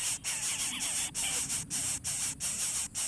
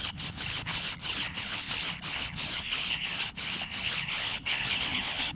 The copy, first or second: second